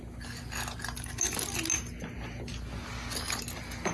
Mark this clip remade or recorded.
recorded